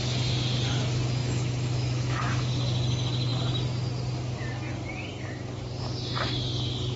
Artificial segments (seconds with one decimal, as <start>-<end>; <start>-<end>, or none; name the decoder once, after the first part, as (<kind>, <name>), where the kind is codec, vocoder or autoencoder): 1.2-2.5 (autoencoder, DAC-VAE)